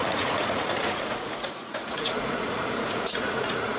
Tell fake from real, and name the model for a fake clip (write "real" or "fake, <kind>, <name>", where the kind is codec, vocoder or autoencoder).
fake, vocoder, Vocos